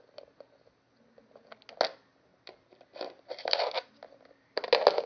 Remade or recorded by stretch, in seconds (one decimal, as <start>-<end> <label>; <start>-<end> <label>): 0.0-2.3 recorded; 2.3-3.9 remade; 3.9-5.1 recorded